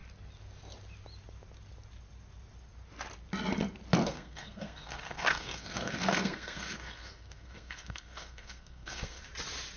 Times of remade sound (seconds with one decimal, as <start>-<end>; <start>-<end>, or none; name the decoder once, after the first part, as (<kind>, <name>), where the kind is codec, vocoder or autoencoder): 4.0-9.2 (codec, SNAC)